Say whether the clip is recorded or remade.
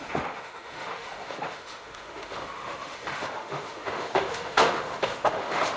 remade